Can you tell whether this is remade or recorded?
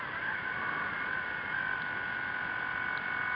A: recorded